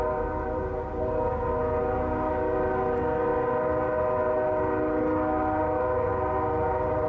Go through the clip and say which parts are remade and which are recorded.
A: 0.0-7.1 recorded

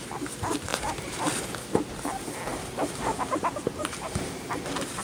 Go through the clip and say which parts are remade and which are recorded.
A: 0.0-0.7 recorded; 0.7-1.2 remade; 1.2-2.5 recorded; 2.5-4.0 remade; 4.0-5.0 recorded

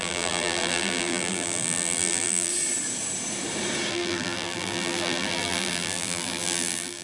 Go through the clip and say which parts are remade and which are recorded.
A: 0.0-2.5 remade; 2.5-3.9 recorded; 3.9-7.0 remade

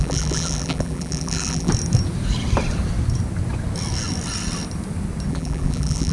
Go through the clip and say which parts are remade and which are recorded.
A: 0.0-1.7 remade; 1.7-5.3 recorded; 5.3-6.1 remade

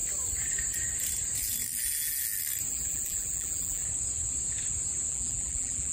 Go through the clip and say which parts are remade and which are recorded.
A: 0.0-2.7 recorded; 2.7-3.8 remade; 3.8-5.1 recorded; 5.1-5.9 remade

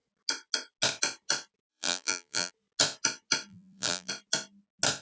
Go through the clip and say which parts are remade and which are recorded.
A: 0.0-1.7 recorded; 1.7-2.5 remade; 2.5-3.5 recorded; 3.5-4.1 remade; 4.1-5.0 recorded

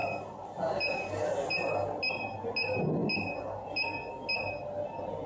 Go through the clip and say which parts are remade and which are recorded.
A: 0.0-2.0 remade; 2.0-5.3 recorded

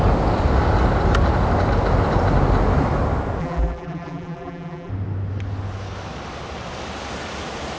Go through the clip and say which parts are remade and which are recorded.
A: 0.0-3.4 recorded; 3.4-4.9 remade; 4.9-7.8 recorded